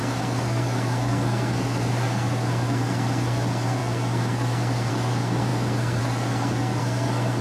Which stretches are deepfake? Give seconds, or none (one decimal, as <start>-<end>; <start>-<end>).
0.0-7.4